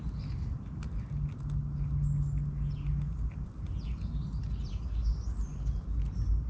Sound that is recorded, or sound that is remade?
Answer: recorded